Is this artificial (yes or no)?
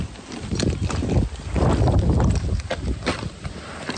no